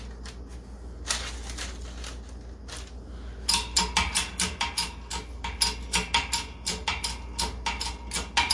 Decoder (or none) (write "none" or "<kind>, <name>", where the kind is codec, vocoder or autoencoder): none